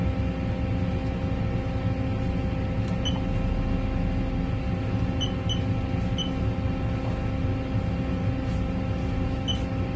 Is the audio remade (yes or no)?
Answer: no